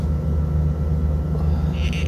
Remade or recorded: recorded